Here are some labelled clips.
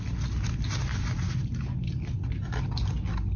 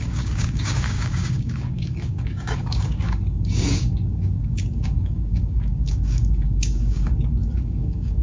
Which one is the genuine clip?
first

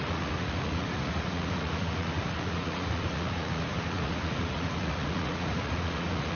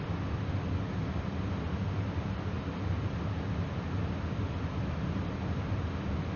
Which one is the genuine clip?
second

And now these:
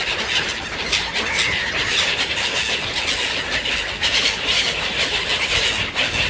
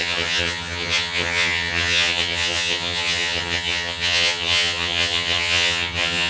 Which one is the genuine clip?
first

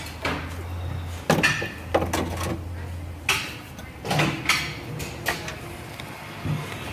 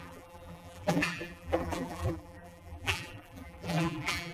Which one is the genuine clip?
first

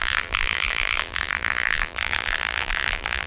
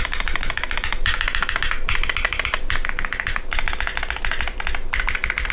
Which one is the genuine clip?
second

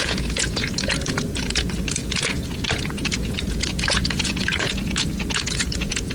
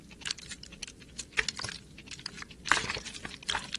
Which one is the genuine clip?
second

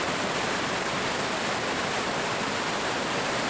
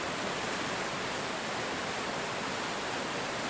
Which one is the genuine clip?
second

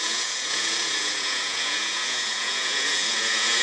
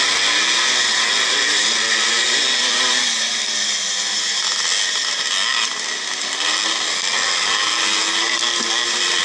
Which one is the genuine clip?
second